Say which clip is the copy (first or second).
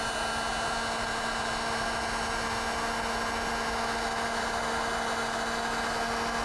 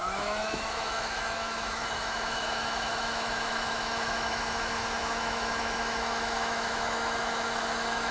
second